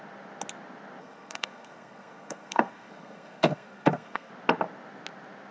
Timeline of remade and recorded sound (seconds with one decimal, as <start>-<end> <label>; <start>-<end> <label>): 0.0-1.0 recorded; 1.0-4.3 remade; 4.3-5.5 recorded